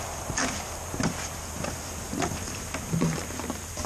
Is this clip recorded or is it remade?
recorded